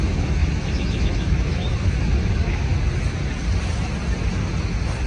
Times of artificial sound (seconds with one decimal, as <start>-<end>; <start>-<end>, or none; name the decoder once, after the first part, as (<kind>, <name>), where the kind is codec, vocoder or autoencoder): 0.0-2.7 (autoencoder, DAC-VAE)